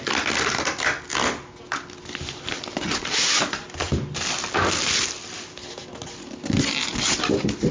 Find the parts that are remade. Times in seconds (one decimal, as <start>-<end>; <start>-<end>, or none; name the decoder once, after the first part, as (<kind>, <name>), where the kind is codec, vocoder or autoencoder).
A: none